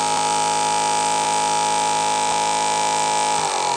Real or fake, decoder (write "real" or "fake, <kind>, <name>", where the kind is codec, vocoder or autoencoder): real